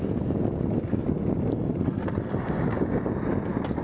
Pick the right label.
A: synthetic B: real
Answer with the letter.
B